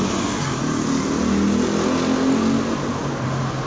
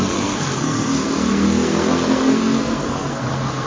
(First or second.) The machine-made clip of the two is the second